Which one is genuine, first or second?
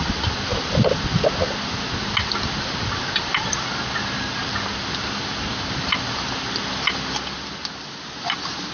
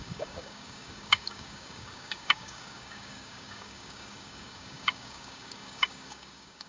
first